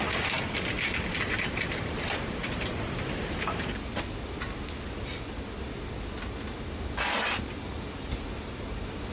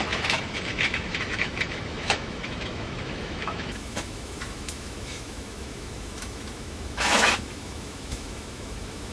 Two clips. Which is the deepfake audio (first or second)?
second